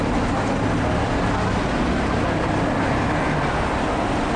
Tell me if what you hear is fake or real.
real